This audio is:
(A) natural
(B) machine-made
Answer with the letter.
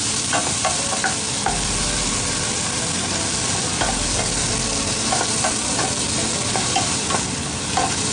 A